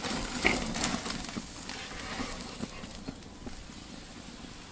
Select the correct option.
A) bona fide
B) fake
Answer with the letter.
A